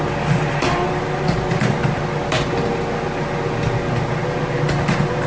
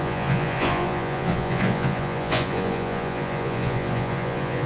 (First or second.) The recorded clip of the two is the first